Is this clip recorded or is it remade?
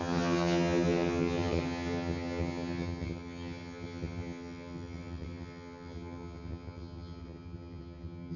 remade